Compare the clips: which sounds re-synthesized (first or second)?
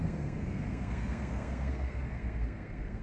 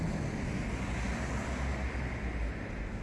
first